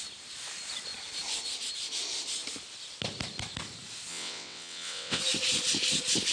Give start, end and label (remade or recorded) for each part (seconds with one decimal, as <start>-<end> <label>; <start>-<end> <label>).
0.0-4.1 recorded; 4.1-5.2 remade; 5.2-6.3 recorded